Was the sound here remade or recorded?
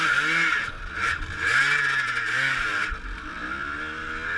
recorded